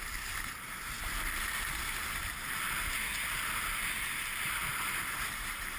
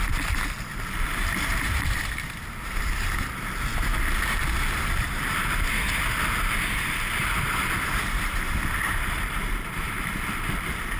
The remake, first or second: second